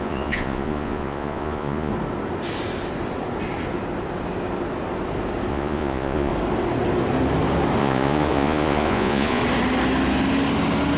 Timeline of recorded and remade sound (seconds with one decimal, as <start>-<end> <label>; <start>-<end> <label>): 0.0-1.9 remade; 1.9-5.5 recorded; 5.5-6.3 remade; 6.3-7.8 recorded; 7.8-9.4 remade; 9.4-11.0 recorded